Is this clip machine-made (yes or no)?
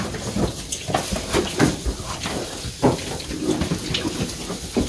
no